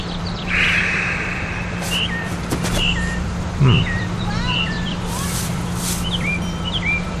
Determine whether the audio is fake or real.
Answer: fake